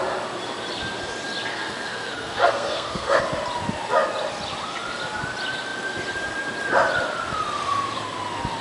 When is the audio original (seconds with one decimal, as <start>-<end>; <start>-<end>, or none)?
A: 0.0-1.5; 3.2-8.6